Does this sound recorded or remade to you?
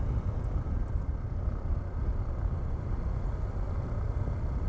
recorded